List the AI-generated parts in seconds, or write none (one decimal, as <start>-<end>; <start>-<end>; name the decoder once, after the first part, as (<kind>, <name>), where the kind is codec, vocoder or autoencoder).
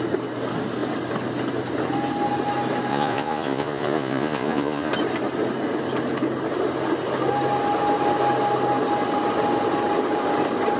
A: 2.9-4.9 (vocoder, Vocos)